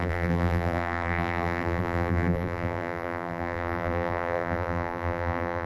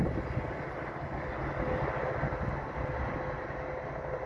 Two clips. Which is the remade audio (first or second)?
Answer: first